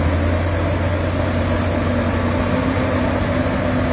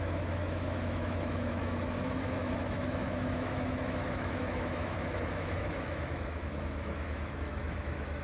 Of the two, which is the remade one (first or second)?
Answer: second